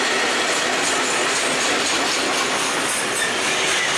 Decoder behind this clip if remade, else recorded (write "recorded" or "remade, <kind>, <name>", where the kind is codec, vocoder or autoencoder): recorded